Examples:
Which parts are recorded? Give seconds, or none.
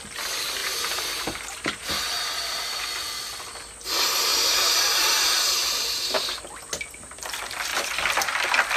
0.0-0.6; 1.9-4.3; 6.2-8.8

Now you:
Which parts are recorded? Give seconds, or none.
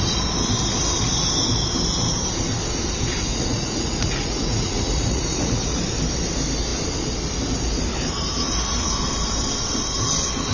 0.0-3.3; 5.8-10.5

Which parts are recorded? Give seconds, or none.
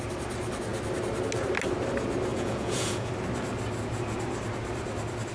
0.0-2.3; 3.1-5.3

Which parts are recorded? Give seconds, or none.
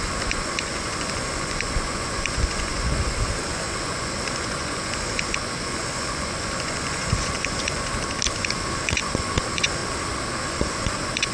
7.9-8.4; 9.8-10.4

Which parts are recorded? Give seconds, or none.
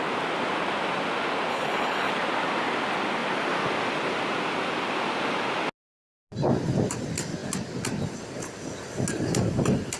0.0-1.5; 2.1-10.0